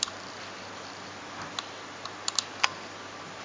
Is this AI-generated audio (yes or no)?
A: no